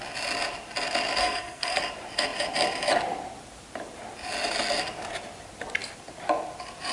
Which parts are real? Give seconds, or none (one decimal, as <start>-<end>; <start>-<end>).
0.0-1.2; 1.8-6.9